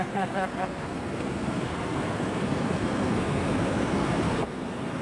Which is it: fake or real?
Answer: fake